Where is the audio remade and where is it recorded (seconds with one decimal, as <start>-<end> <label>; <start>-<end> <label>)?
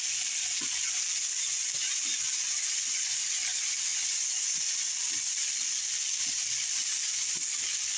0.0-8.0 recorded